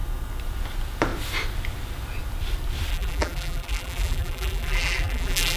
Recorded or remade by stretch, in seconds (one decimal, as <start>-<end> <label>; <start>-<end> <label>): 0.0-2.9 recorded; 2.9-5.6 remade